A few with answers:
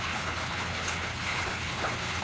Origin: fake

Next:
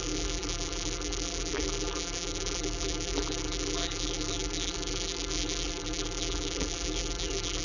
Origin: fake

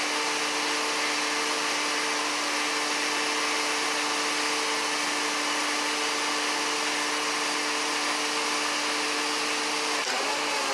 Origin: real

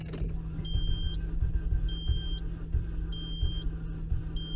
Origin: real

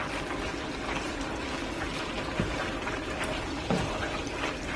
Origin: real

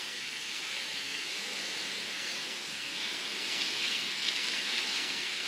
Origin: fake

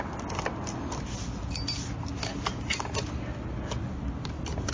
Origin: real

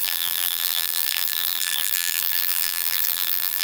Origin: fake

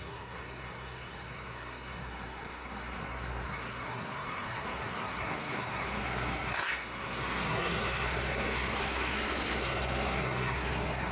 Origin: fake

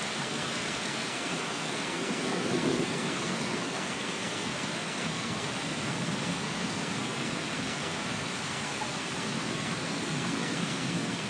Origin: fake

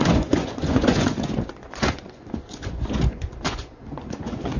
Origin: fake